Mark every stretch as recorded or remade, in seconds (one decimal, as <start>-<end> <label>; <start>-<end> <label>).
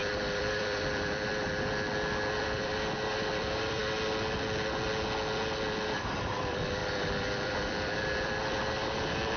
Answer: 0.0-1.3 remade; 1.3-2.4 recorded; 2.4-3.8 remade; 3.8-6.3 recorded; 6.3-9.4 remade